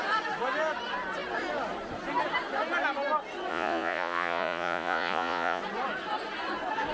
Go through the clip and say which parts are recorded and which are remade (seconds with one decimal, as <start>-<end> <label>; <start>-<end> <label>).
0.0-3.5 recorded; 3.5-5.6 remade; 5.6-6.9 recorded